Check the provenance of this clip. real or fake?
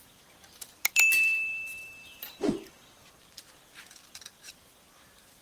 fake